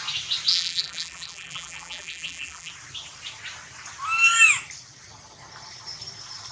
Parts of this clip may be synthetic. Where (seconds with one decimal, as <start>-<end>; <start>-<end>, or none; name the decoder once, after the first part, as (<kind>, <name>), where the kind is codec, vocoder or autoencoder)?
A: 0.5-2.7 (vocoder, BigVGAN v2)